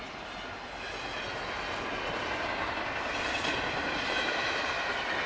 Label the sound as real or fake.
real